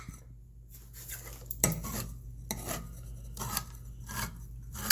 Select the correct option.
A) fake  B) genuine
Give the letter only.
B